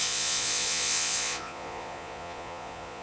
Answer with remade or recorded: remade